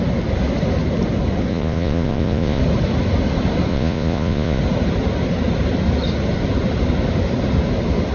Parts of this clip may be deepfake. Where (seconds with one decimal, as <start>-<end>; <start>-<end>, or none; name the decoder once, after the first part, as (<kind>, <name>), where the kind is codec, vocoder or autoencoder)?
1.5-2.6 (vocoder, Vocos); 3.7-4.6